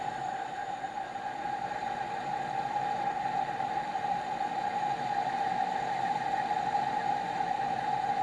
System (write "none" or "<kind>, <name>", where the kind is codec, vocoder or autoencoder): vocoder, BigVGAN v2